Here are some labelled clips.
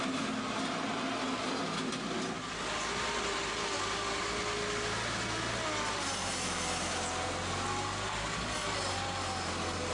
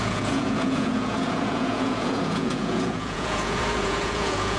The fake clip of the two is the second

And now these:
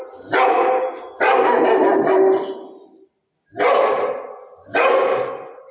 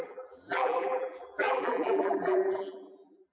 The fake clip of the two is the second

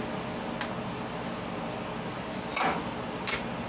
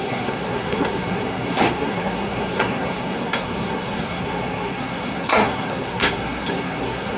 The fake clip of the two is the second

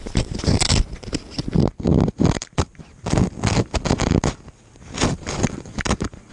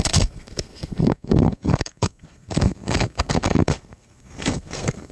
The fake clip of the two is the second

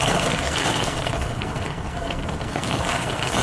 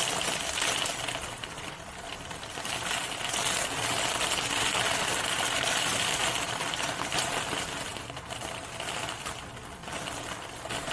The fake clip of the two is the first